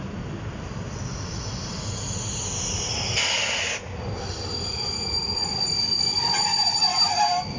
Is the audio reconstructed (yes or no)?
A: no